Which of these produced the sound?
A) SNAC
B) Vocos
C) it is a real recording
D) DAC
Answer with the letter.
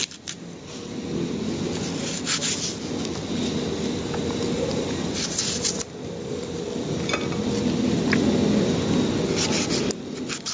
C